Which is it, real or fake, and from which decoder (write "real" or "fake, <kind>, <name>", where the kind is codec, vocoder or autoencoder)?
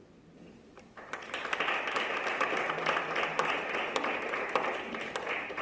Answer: real